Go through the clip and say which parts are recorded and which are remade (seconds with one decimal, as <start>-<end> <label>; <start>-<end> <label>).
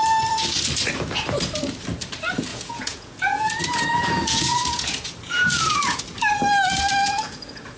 0.0-2.5 recorded; 2.5-6.0 remade; 6.0-7.0 recorded; 7.0-7.8 remade